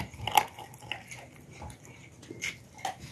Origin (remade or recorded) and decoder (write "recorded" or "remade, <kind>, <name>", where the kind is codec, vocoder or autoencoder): recorded